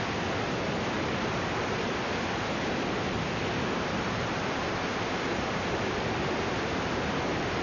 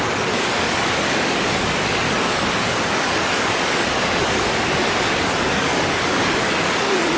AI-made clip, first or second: second